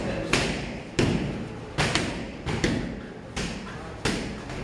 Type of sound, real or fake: real